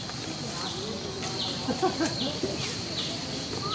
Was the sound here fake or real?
real